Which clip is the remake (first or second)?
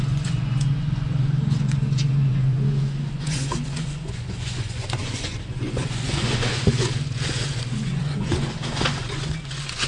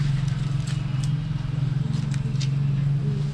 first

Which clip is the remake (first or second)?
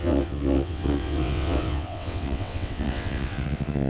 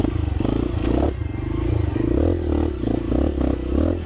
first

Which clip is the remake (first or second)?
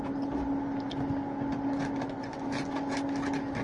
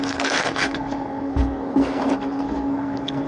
second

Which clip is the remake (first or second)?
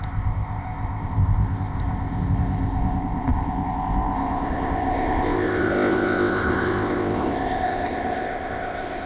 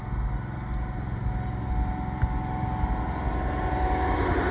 first